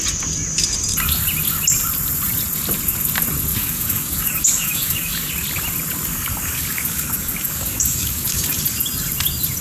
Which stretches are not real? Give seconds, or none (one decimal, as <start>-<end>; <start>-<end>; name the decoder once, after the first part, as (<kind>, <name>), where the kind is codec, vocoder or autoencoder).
3.5-5.3 (codec, DAC); 6.1-8.6